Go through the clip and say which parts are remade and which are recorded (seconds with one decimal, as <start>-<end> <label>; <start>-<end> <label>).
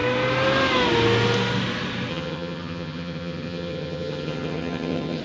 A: 0.0-2.1 recorded; 2.1-5.2 remade